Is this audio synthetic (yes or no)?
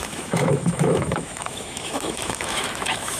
yes